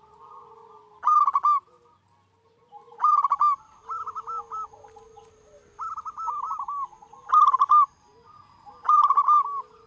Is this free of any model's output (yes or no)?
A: yes